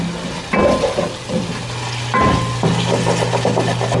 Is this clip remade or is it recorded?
recorded